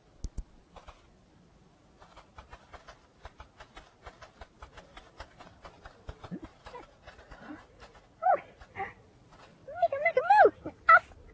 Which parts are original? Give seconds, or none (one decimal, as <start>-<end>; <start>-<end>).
0.0-6.5; 8.7-11.3